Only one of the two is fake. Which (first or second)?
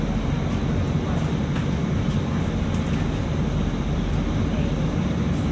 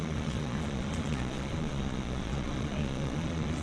second